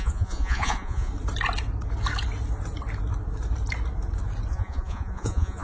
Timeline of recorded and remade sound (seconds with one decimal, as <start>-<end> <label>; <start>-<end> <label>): 0.0-1.1 remade; 1.1-4.5 recorded; 4.5-5.6 remade